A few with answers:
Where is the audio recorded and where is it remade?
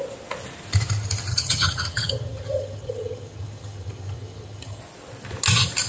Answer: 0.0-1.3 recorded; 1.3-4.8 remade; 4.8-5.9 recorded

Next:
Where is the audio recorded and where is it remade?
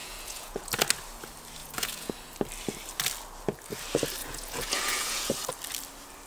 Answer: 0.0-0.7 remade; 0.7-1.6 recorded; 1.6-2.1 remade; 2.1-4.2 recorded; 4.2-5.3 remade; 5.3-6.3 recorded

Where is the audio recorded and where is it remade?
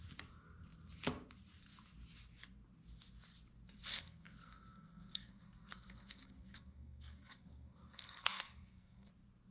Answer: 0.0-3.9 recorded; 3.9-9.1 remade; 9.1-9.5 recorded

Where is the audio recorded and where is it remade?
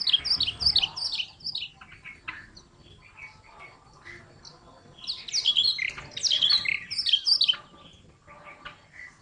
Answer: 0.0-9.2 recorded